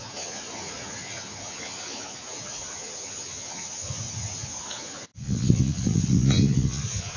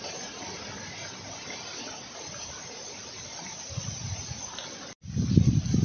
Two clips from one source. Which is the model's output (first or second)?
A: first